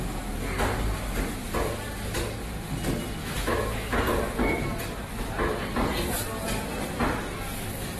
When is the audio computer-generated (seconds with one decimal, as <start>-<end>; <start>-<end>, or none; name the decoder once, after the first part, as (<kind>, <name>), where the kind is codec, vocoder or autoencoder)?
3.2-4.0 (autoencoder, DAC-VAE)